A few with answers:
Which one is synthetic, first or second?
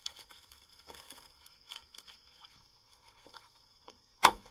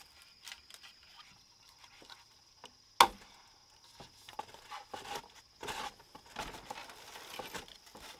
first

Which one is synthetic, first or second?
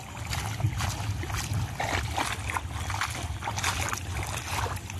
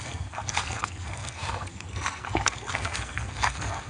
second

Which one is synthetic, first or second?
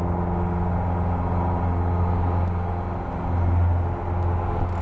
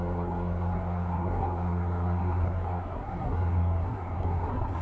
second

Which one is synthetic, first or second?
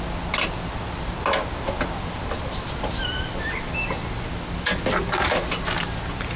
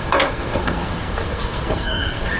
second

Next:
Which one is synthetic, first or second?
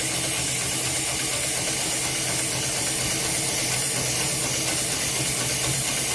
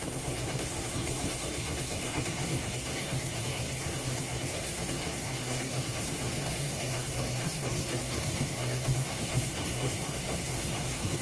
second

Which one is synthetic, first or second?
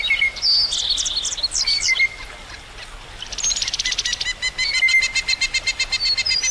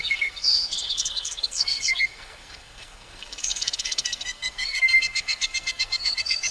second